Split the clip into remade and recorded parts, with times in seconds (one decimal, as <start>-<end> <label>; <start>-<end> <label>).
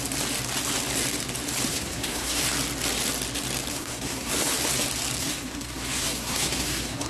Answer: 0.0-1.7 recorded; 1.7-2.4 remade; 2.4-3.7 recorded; 3.7-4.3 remade; 4.3-5.2 recorded; 5.2-7.1 remade